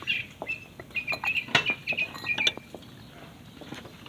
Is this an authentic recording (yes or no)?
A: yes